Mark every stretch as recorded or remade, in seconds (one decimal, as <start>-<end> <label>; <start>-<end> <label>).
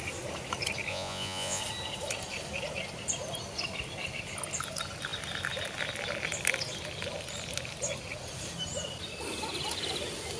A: 0.0-0.9 recorded; 0.9-1.6 remade; 1.6-10.4 recorded